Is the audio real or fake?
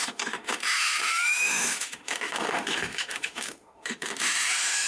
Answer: fake